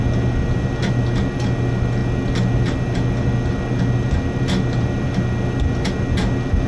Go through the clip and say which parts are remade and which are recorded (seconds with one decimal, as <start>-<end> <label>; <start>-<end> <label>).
0.0-6.7 recorded